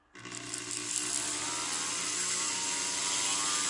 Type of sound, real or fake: real